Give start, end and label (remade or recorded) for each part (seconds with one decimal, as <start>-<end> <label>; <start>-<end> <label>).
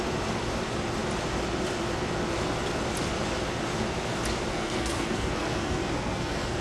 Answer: 0.0-4.5 recorded; 4.5-6.6 remade